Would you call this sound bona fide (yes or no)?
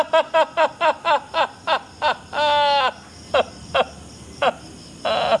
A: yes